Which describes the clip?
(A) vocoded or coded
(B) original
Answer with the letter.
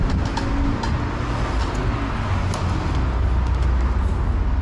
B